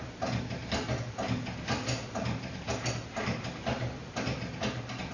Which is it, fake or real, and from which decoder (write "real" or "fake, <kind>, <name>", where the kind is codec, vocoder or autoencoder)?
real